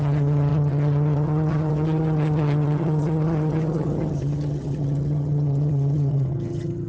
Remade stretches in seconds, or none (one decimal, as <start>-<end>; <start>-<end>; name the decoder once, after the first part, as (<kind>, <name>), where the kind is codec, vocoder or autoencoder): 0.0-6.9 (vocoder, HiFi-GAN)